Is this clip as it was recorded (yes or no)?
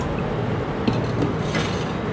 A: yes